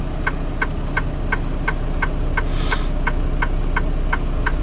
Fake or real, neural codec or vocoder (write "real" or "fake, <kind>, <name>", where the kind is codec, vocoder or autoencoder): real